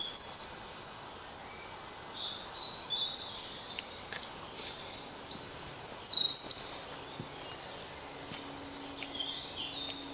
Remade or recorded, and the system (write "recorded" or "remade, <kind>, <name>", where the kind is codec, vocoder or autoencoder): recorded